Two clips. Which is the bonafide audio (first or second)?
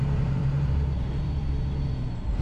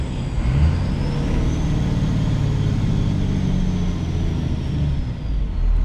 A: second